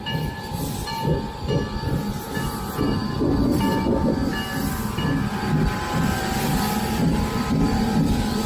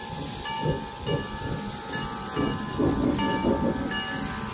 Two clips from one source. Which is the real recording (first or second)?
second